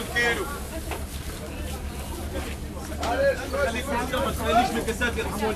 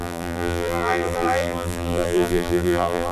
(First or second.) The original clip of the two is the first